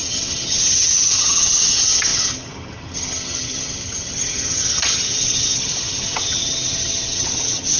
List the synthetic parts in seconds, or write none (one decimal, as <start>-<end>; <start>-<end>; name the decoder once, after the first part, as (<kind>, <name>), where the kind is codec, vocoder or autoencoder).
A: 0.0-7.8 (vocoder, HiFi-GAN)